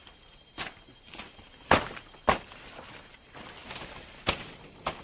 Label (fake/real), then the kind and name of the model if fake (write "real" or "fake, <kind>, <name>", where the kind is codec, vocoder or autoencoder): real